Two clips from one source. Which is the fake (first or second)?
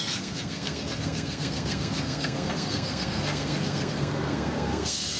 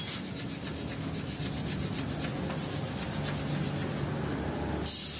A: first